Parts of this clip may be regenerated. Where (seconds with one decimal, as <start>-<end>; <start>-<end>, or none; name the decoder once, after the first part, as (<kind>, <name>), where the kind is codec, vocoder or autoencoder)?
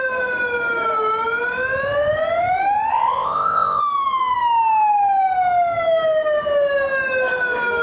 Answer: 2.9-3.8 (codec, ZipCodec)